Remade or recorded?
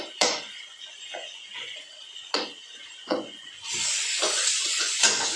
remade